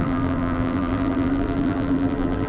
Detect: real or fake fake